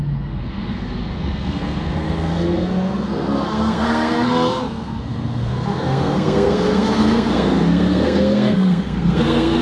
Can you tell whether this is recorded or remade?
remade